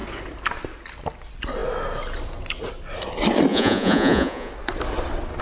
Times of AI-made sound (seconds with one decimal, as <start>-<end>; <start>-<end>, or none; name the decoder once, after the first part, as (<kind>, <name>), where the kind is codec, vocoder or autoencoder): 3.5-4.5 (vocoder, Vocos)